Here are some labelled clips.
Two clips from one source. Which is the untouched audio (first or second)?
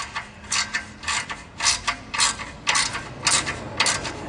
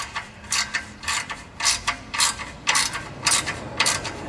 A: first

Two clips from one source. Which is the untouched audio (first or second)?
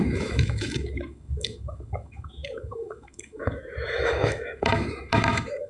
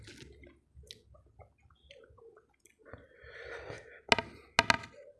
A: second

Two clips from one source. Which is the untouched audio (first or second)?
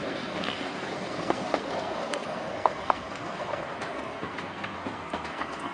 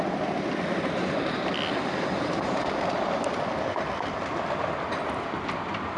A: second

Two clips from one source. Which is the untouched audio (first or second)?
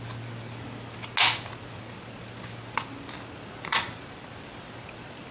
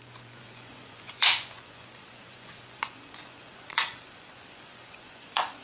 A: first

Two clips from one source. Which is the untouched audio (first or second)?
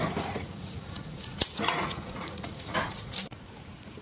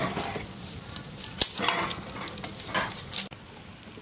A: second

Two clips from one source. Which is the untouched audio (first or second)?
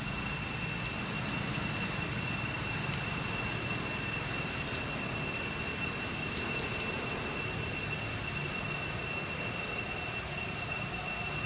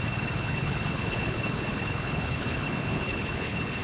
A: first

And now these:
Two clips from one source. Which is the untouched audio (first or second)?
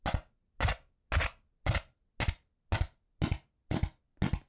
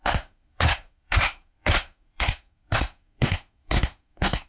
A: first